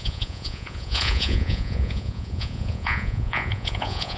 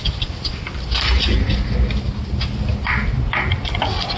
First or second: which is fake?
first